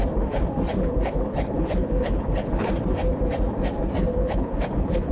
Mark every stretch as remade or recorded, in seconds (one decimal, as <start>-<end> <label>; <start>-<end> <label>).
0.0-0.8 recorded; 0.8-2.7 remade; 2.7-4.1 recorded; 4.1-5.1 remade